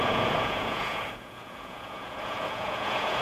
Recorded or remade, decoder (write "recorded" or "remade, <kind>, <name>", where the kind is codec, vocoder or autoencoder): remade, vocoder, Vocos